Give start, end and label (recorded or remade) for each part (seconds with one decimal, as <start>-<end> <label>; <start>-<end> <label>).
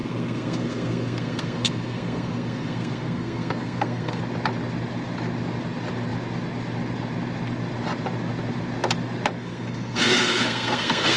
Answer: 0.0-4.2 remade; 4.2-9.4 recorded; 9.4-11.2 remade